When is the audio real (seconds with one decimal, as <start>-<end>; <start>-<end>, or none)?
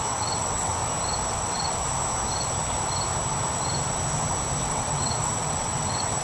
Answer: 0.8-1.3; 1.8-4.6